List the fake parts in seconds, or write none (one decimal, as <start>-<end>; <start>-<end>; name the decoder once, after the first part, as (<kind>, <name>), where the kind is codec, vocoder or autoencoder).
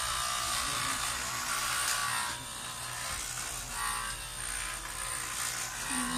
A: none